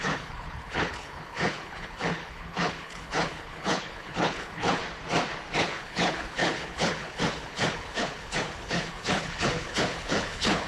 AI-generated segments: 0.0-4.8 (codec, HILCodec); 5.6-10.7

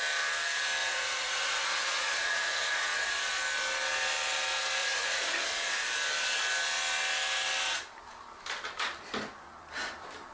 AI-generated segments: 0.8-3.1 (vocoder, Vocos); 4.8-5.5

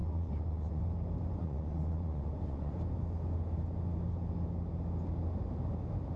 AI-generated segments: 0.0-0.8 (vocoder, Vocos); 1.4-2.7

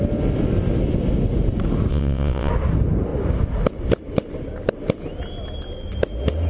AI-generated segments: 1.9-2.5 (vocoder, WaveNeXt)